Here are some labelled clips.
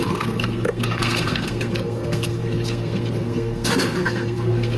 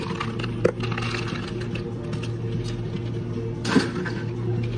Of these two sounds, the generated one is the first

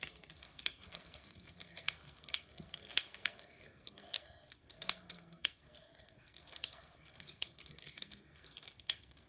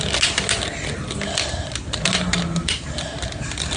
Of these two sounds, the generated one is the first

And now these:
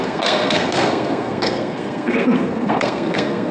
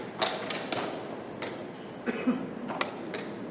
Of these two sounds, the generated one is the first